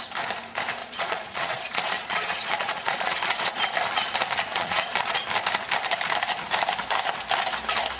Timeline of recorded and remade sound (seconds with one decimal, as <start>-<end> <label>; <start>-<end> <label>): 0.0-0.8 recorded; 0.8-3.6 remade; 3.6-4.5 recorded; 4.5-5.2 remade; 5.2-8.0 recorded